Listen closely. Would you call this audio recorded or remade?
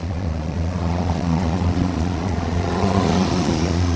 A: remade